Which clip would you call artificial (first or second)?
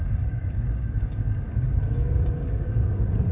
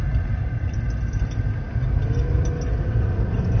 first